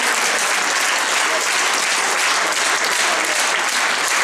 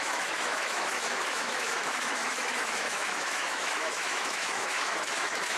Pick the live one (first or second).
first